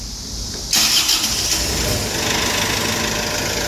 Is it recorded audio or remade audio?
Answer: recorded